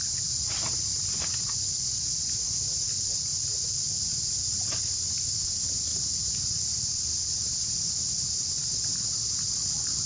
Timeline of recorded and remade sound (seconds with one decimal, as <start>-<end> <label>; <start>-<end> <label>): 0.0-0.9 remade; 0.9-1.7 recorded; 1.7-10.1 remade